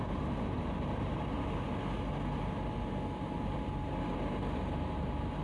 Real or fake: real